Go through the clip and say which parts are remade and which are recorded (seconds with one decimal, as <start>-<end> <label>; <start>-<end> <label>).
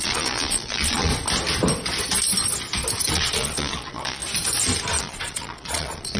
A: 0.0-1.1 remade; 1.1-3.1 recorded; 3.1-4.2 remade; 4.2-5.0 recorded; 5.0-6.2 remade